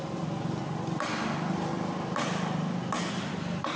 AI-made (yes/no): no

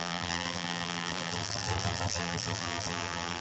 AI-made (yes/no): yes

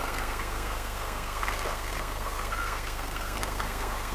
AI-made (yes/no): yes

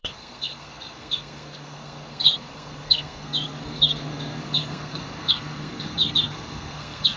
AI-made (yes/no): yes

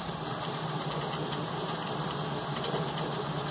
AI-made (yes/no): no